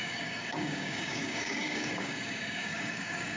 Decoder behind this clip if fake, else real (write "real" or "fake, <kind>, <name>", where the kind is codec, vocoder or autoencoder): fake, codec, DAC